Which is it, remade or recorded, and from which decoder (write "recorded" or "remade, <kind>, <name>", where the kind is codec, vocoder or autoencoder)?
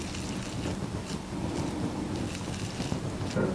recorded